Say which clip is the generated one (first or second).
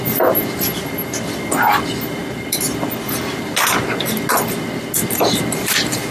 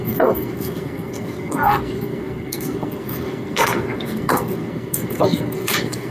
second